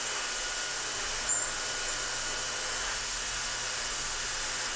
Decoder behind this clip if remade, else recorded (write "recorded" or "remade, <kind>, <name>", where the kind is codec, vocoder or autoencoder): recorded